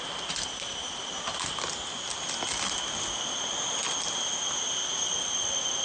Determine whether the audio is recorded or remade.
recorded